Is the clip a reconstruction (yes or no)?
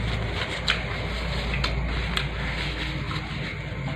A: no